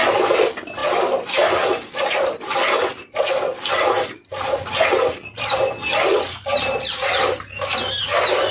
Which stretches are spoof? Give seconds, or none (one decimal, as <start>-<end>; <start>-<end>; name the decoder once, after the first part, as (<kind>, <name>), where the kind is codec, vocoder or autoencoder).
none